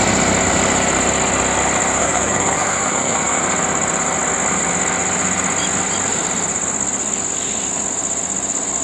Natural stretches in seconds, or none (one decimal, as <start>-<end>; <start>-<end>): 0.0-2.0; 3.4-8.8